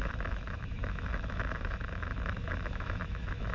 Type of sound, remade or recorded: remade